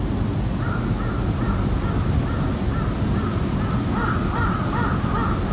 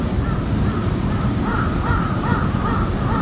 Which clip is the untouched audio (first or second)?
first